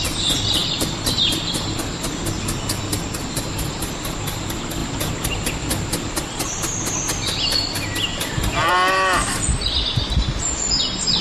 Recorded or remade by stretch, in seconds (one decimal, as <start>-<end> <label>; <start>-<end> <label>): 0.0-11.2 recorded